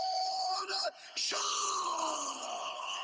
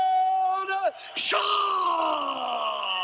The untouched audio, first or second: second